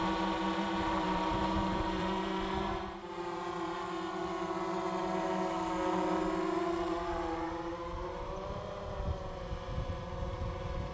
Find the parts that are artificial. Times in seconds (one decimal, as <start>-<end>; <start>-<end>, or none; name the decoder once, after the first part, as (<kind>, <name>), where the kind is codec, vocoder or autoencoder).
0.0-4.2 (vocoder, BigVGAN v2); 7.7-10.9